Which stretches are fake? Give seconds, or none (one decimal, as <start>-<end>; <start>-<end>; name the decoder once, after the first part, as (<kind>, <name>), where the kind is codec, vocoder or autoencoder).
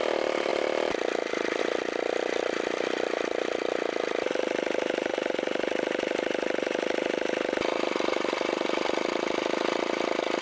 none